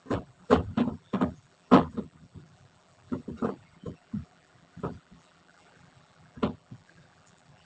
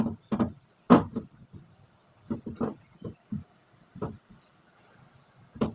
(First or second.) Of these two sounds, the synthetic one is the first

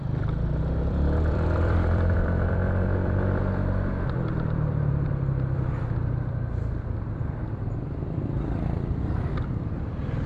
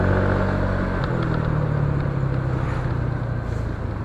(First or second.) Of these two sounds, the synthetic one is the first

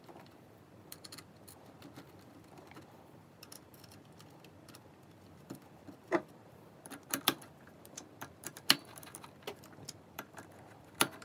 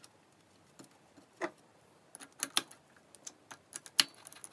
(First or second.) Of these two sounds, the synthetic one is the first